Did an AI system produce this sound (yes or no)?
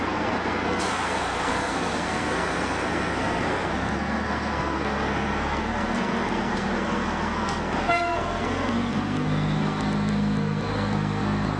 yes